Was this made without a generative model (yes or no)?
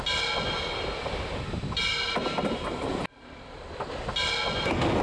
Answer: yes